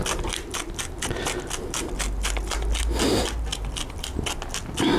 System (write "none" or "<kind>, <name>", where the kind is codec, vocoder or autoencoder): none